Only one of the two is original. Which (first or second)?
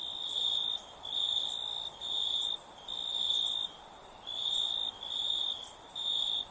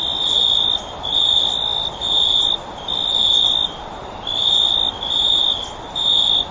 second